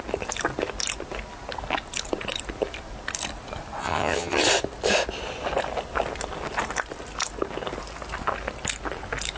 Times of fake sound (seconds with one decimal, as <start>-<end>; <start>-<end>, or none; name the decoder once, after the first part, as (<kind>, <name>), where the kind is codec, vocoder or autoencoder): 3.8-4.4 (vocoder, HiFi-GAN)